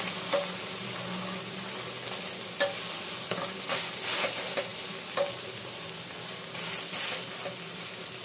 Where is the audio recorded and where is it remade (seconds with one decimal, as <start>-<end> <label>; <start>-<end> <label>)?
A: 0.0-8.2 recorded